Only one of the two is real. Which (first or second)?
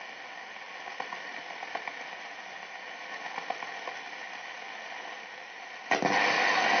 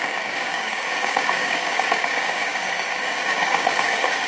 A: first